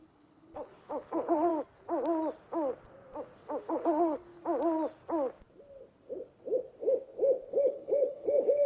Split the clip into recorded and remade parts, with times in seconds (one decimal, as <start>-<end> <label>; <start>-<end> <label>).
0.0-1.5 remade; 1.5-3.6 recorded; 3.6-4.3 remade; 4.3-7.5 recorded; 7.5-8.7 remade